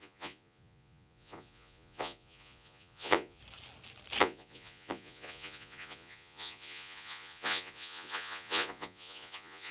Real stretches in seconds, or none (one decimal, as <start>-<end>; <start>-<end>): 3.4-4.2